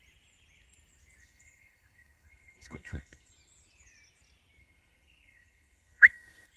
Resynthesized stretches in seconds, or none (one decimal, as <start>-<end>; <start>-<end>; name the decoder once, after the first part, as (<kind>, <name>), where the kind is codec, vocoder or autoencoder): 1.2-3.3 (codec, SNAC); 4.6-6.6